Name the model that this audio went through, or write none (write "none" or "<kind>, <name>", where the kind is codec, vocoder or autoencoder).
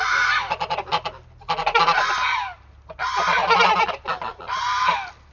none